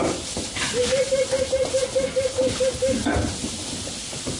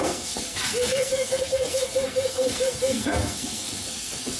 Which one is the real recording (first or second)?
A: first